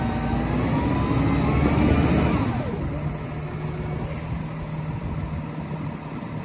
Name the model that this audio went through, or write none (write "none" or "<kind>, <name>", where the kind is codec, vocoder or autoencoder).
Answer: none